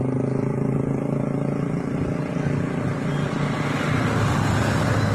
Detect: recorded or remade recorded